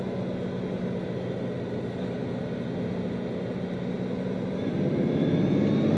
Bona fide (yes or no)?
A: yes